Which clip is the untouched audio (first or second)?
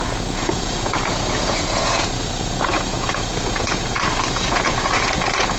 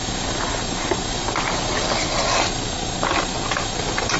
second